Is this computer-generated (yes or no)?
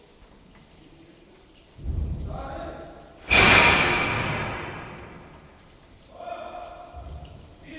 yes